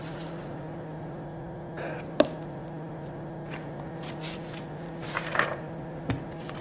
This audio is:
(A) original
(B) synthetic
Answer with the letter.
A